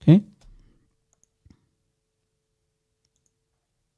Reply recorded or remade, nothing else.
recorded